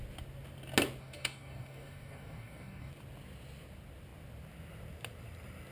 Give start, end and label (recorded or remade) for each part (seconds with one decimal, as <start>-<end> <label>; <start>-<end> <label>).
0.0-1.0 recorded; 1.0-2.9 remade; 2.9-5.7 recorded